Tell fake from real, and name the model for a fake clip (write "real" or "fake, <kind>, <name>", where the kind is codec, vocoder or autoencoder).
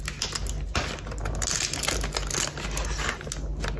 real